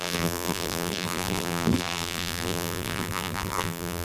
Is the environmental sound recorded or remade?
remade